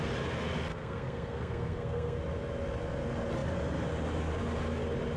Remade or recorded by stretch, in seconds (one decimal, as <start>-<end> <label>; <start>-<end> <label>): 0.0-0.7 recorded; 0.7-2.2 remade; 2.2-5.2 recorded